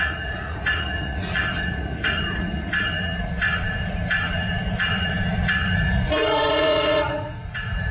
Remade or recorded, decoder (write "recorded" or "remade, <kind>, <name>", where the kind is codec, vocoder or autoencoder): remade, vocoder, Vocos